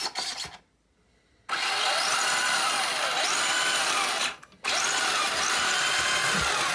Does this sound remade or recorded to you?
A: recorded